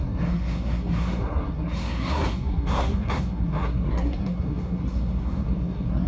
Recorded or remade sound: remade